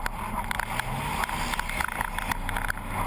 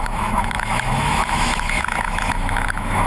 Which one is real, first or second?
first